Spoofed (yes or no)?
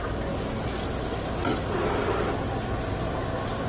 no